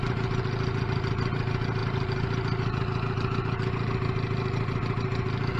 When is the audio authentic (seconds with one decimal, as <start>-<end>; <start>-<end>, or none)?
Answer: 0.0-5.6